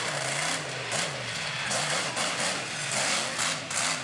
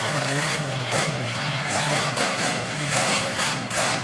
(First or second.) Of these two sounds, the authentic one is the first